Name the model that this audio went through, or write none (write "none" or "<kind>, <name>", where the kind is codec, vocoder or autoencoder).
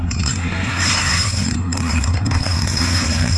codec, SNAC